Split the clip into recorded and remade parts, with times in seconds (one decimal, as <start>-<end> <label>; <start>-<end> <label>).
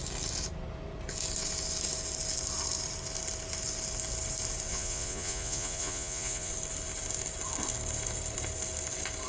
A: 0.0-4.7 recorded; 4.7-6.5 remade; 6.5-9.3 recorded